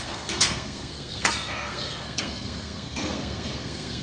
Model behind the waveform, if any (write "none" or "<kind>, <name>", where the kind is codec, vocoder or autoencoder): codec, SNAC